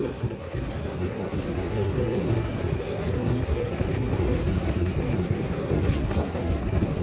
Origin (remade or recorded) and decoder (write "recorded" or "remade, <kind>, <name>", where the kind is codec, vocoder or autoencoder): remade, codec, SNAC